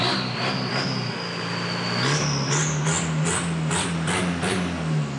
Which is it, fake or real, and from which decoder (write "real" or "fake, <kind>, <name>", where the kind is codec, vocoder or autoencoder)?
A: real